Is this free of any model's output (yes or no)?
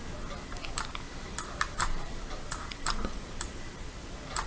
yes